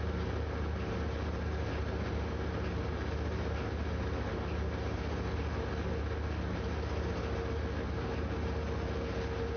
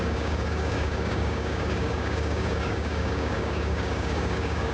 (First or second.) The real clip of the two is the first